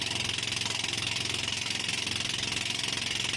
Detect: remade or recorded recorded